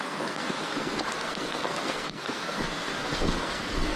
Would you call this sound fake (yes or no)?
yes